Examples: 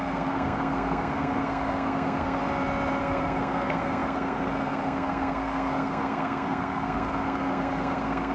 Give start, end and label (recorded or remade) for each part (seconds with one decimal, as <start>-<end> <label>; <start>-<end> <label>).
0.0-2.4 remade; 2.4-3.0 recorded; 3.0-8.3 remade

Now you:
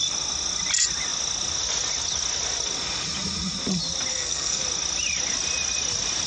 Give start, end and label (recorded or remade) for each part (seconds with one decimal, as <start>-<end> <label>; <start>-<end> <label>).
0.0-4.1 recorded; 4.1-4.6 remade; 4.6-6.3 recorded

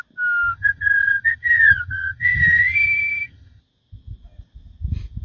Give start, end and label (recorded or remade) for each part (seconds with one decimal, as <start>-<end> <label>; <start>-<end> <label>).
0.0-0.5 recorded; 0.5-3.6 remade; 3.6-5.2 recorded

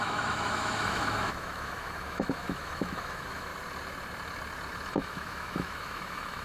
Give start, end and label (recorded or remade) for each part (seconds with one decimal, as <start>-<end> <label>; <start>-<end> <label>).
0.0-3.5 remade; 3.5-4.9 recorded; 4.9-6.4 remade

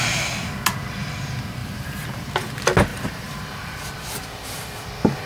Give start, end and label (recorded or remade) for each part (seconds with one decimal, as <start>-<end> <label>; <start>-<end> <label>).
0.0-1.6 recorded; 1.6-2.3 remade; 2.3-2.9 recorded; 2.9-3.8 remade; 3.8-5.3 recorded

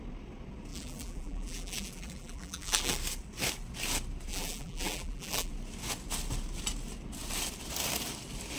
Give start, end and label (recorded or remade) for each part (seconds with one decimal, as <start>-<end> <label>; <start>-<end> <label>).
0.0-0.7 recorded; 0.7-3.0 remade; 3.0-4.3 recorded; 4.3-5.5 remade; 5.5-8.6 recorded

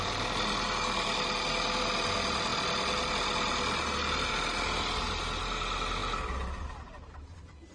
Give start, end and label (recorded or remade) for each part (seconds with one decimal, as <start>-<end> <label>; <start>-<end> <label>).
0.0-7.7 recorded